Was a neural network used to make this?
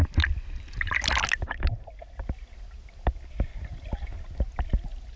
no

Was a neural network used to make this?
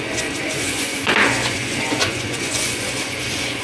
yes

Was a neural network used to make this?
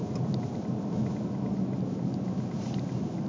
no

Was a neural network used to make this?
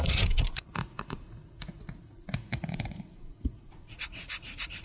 yes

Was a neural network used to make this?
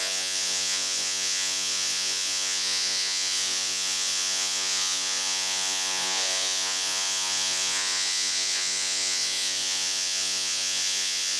yes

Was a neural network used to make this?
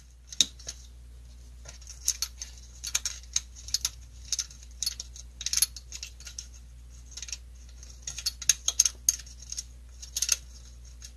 no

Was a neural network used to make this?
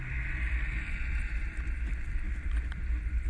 no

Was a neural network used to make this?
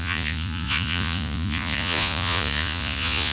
yes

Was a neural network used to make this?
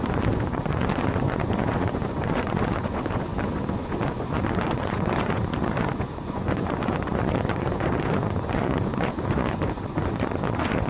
yes